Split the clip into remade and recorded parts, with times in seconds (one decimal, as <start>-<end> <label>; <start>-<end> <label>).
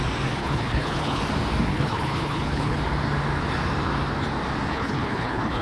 0.0-0.4 recorded; 0.4-1.2 remade; 1.2-1.7 recorded; 1.7-2.8 remade; 2.8-4.7 recorded; 4.7-5.6 remade